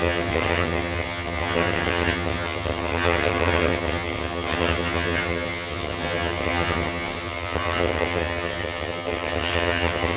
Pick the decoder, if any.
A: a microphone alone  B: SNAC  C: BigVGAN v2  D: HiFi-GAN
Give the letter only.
D